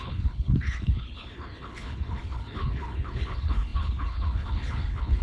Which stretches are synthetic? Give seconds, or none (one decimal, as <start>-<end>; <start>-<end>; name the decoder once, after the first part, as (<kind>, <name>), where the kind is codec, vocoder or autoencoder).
0.0-5.2 (codec, HILCodec)